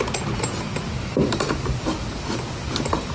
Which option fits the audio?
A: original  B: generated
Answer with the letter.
A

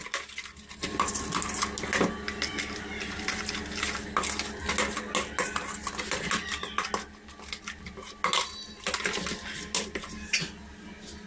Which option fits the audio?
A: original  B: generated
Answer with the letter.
A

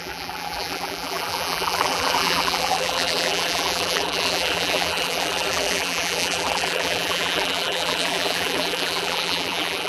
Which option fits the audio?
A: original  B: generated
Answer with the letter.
B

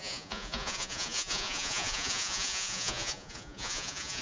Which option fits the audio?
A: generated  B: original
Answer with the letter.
A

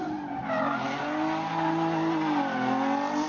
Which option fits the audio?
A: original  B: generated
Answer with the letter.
A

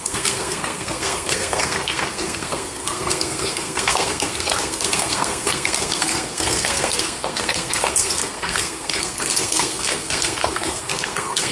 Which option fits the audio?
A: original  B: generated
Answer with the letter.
B